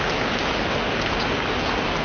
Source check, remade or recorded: recorded